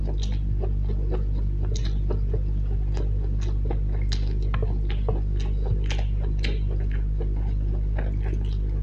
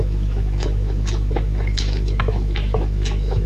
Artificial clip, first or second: second